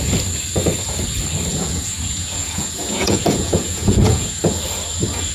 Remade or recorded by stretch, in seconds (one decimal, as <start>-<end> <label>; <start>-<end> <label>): 0.0-1.5 recorded; 1.5-4.4 remade; 4.4-5.3 recorded